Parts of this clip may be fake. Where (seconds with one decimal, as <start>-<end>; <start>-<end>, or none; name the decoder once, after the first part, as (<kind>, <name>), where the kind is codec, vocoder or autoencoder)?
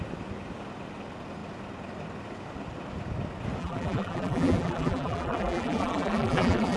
3.6-6.8 (vocoder, BigVGAN v2)